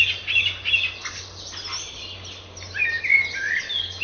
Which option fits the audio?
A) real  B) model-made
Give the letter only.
A